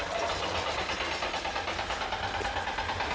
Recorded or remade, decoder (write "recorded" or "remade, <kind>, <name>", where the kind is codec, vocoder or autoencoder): recorded